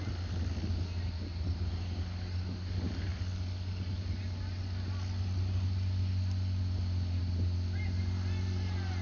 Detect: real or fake real